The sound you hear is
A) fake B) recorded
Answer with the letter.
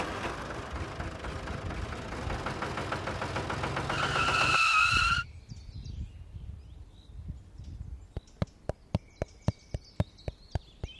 B